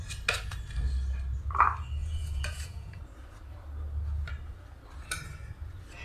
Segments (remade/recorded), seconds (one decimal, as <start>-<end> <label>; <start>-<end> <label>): 0.0-2.0 recorded; 2.0-3.0 remade; 3.0-6.0 recorded